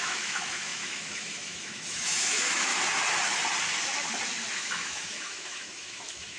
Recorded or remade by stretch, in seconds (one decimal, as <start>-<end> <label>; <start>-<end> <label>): 0.0-2.7 remade; 2.7-4.5 recorded; 4.5-6.4 remade